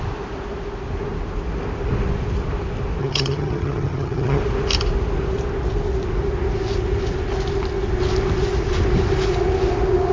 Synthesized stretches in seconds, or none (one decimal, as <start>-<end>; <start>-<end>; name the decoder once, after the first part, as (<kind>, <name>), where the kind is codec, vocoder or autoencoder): 3.0-4.4 (vocoder, HiFi-GAN)

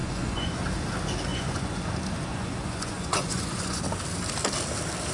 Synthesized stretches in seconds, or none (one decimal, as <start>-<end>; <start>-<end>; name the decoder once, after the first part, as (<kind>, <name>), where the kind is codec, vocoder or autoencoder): 0.0-0.6 (vocoder, Vocos); 1.3-1.9; 2.3-3.8